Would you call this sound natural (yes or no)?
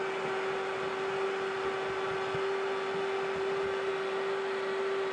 yes